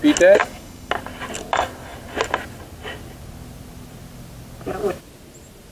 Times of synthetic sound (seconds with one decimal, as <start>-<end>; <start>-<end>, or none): 0.4-0.9